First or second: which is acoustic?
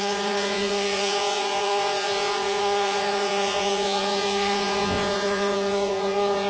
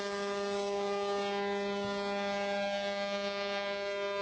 second